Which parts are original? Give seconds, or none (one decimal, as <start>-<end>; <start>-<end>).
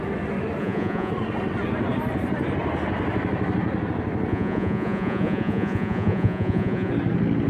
0.0-0.6; 1.1-4.3; 6.9-7.5